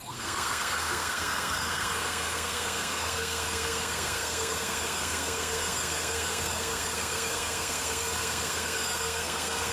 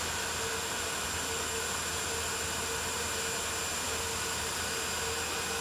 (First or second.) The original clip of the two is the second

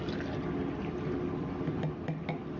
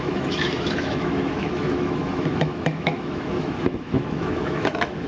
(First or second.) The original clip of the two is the first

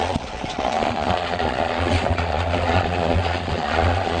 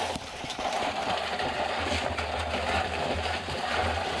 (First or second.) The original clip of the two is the second